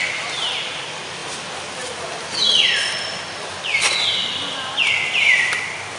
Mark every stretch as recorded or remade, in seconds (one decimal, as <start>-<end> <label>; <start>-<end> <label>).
0.0-6.0 recorded